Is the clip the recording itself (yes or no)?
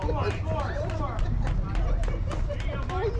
yes